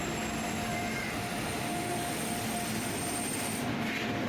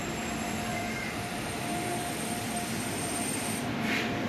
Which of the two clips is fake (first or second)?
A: second